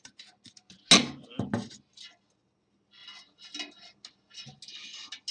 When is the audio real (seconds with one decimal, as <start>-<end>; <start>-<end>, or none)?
0.0-5.3